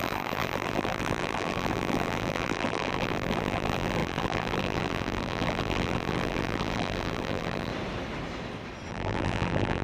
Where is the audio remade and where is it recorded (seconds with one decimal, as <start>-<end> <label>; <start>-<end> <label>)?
0.0-7.7 remade; 7.7-8.9 recorded; 8.9-9.8 remade